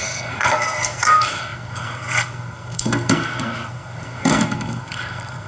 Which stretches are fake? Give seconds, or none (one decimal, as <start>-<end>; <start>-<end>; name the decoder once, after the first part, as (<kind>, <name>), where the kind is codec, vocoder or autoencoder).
0.0-5.5 (codec, SNAC)